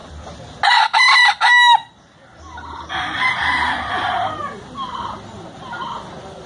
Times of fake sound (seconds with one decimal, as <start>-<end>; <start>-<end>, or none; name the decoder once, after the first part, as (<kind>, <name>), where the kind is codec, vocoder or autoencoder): none